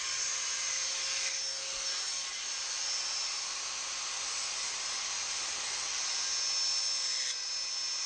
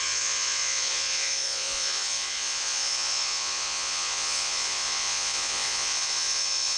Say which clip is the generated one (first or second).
second